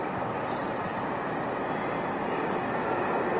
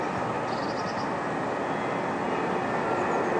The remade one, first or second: first